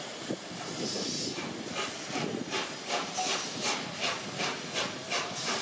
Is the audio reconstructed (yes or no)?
no